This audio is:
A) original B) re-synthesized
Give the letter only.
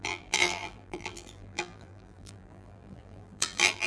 B